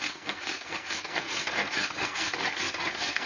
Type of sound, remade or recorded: remade